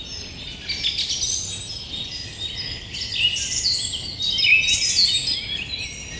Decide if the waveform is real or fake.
real